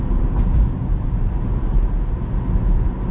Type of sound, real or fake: real